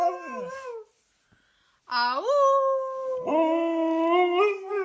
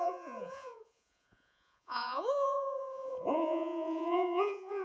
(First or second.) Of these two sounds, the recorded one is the first